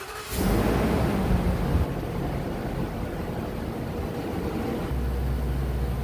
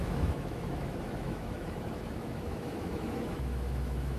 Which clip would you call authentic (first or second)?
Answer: first